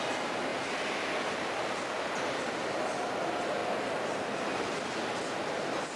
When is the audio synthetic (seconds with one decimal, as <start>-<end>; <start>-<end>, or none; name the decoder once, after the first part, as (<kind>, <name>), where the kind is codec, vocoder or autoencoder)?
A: none